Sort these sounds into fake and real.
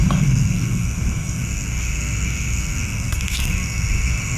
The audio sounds fake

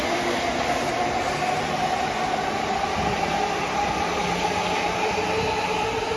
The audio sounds real